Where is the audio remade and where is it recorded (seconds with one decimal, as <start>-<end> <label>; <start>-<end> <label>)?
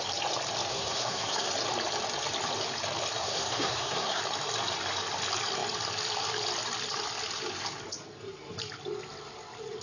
0.0-0.7 recorded; 0.7-1.5 remade; 1.5-3.2 recorded; 3.2-4.2 remade; 4.2-9.8 recorded